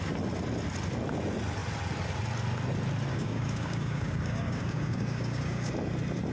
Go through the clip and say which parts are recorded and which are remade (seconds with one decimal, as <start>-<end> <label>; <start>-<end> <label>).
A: 0.0-3.1 recorded; 3.1-5.7 remade; 5.7-6.3 recorded